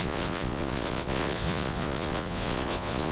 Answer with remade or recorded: remade